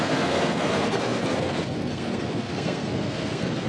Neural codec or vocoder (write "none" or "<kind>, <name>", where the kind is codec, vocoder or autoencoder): codec, SNAC